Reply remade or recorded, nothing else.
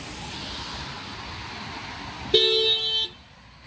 recorded